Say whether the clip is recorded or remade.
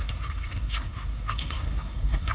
remade